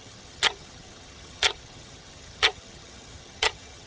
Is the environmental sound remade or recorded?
remade